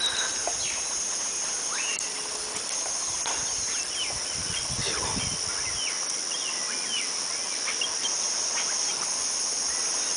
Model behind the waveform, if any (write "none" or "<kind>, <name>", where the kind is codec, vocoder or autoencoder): none